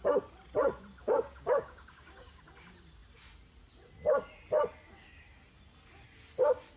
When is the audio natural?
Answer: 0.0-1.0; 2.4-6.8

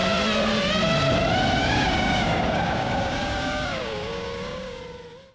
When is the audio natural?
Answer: 0.0-1.6; 4.8-5.3